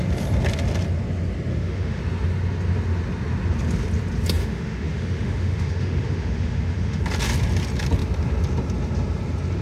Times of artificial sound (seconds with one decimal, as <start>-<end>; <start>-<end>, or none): 1.5-2.0; 4.4-7.0